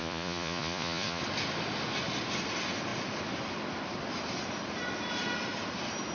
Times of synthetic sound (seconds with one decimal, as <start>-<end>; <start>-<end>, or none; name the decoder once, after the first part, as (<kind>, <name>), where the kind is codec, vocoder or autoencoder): 0.0-1.2 (vocoder, Vocos)